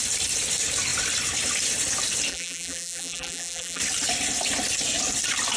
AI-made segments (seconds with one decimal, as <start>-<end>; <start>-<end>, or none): 2.3-3.8